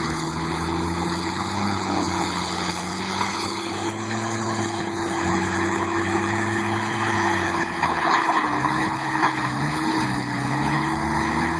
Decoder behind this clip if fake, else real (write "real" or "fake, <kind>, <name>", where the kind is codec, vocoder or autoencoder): fake, codec, HILCodec